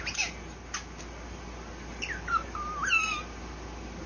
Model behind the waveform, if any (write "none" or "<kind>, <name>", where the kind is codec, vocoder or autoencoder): none